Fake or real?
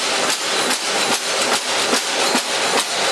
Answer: real